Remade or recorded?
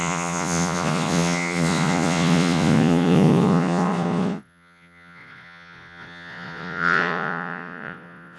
remade